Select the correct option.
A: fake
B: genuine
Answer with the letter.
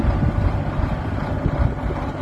B